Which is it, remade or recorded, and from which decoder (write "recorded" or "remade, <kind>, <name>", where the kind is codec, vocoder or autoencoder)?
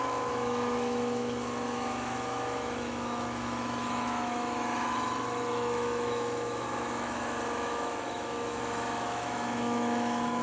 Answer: remade, autoencoder, DAC-VAE